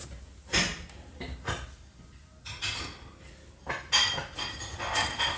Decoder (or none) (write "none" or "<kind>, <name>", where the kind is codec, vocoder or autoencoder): none